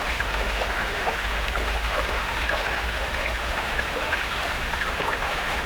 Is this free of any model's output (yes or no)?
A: no